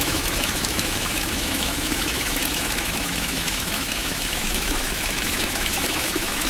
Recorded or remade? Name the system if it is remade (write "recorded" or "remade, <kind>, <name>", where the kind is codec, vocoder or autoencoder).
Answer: remade, autoencoder, DAC-VAE